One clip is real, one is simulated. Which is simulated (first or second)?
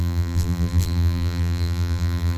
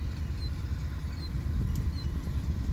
first